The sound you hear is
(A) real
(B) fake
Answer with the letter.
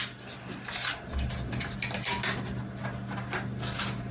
A